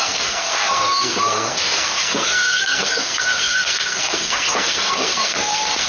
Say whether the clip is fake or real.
fake